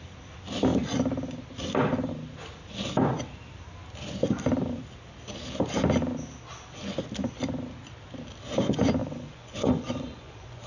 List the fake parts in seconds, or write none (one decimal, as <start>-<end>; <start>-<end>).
9.0-10.7